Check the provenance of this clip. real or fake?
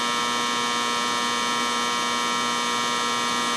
real